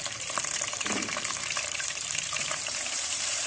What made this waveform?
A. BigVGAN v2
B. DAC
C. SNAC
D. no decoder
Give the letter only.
A